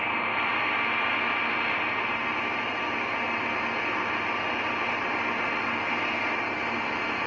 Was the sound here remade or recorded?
recorded